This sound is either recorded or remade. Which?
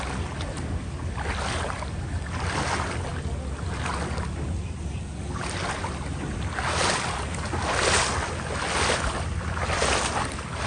recorded